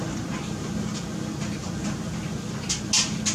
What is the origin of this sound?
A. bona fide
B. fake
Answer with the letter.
A